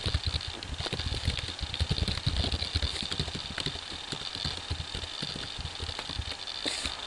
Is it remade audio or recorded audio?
recorded